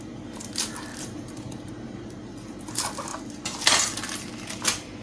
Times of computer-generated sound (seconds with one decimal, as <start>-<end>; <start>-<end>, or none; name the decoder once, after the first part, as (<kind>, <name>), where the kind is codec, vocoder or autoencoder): 0.9-1.7 (vocoder, BigVGAN v2); 3.1-3.6